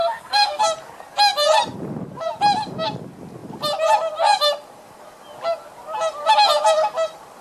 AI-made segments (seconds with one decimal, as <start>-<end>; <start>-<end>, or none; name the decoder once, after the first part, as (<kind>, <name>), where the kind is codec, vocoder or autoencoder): 0.0-0.6 (codec, SNAC)